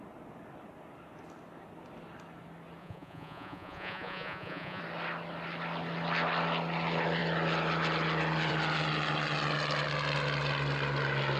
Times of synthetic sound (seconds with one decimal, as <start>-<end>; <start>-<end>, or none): 2.8-4.8